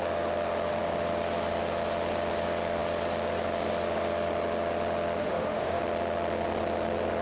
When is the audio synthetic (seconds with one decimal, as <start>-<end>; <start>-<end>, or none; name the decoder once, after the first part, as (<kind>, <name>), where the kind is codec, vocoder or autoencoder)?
5.2-5.8 (autoencoder, DAC-VAE)